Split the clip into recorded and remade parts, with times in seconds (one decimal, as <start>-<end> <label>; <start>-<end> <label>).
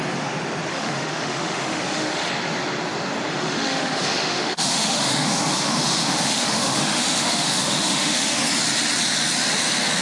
0.0-0.7 recorded; 0.7-2.3 remade; 2.3-3.3 recorded; 3.3-8.4 remade; 8.4-10.0 recorded